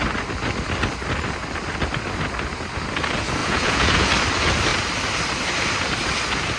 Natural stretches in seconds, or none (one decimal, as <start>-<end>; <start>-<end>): 0.0-3.4; 4.1-6.6